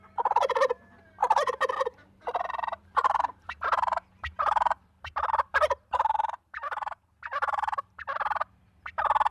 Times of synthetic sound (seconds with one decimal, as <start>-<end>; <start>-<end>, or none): 2.8-8.0